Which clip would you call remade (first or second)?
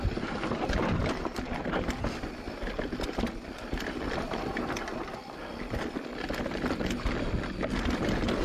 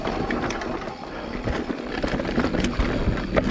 first